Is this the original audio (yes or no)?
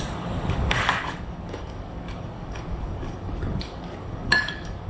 no